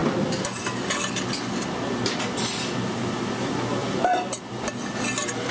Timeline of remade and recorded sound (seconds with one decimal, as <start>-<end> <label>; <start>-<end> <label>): 0.0-3.8 recorded; 3.8-4.8 remade; 4.8-5.5 recorded